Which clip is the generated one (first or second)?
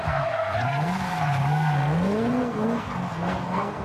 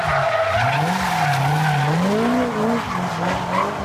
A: first